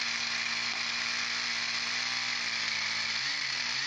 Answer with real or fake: real